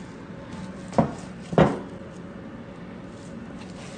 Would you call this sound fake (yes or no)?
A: no